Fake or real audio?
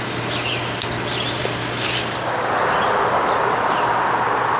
real